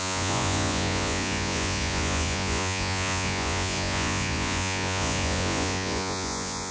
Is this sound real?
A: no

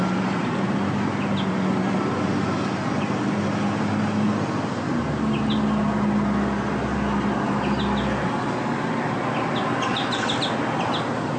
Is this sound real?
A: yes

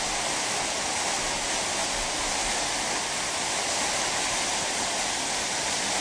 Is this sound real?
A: yes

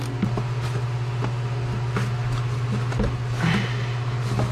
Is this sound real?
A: yes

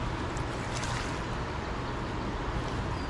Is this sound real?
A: yes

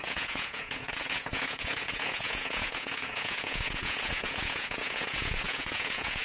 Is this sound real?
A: no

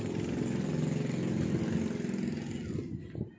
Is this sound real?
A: yes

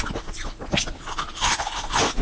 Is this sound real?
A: yes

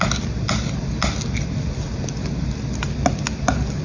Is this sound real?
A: yes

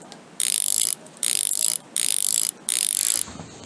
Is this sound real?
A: yes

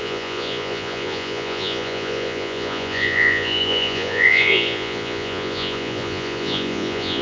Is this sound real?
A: no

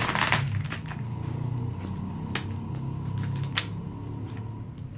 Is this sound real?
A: yes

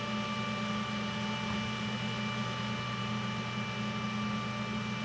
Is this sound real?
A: yes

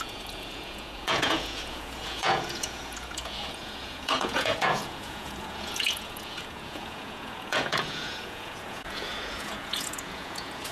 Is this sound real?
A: no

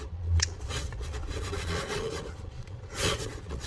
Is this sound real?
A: no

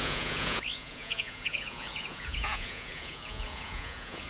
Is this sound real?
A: no